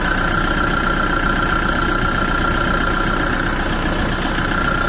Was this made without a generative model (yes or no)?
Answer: yes